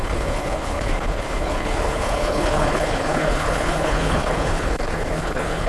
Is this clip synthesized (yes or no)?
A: yes